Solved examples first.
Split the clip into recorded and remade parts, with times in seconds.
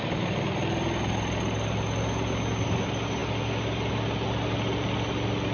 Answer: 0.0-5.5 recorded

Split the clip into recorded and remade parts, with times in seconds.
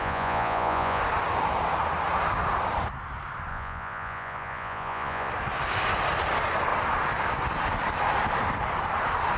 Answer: 0.0-1.0 remade; 1.0-3.5 recorded; 3.5-5.3 remade; 5.3-9.4 recorded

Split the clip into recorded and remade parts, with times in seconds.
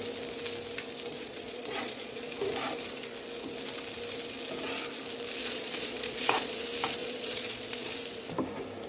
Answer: 0.0-1.1 recorded; 1.1-2.3 remade; 2.3-5.4 recorded; 5.4-6.6 remade; 6.6-7.0 recorded; 7.0-7.9 remade; 7.9-8.9 recorded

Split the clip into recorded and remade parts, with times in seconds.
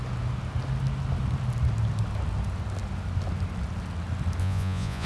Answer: 0.0-4.4 recorded; 4.4-5.1 remade